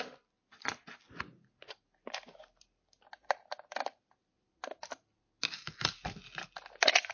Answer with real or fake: real